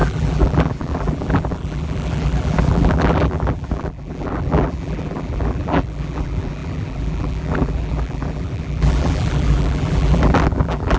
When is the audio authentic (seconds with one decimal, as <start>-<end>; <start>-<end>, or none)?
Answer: none